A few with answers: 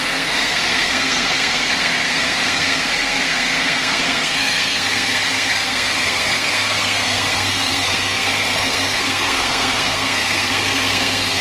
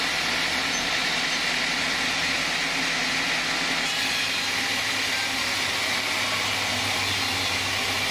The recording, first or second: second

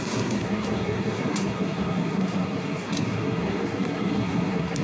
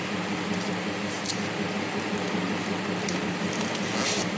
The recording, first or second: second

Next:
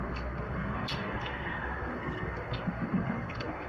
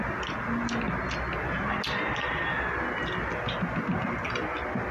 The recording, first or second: second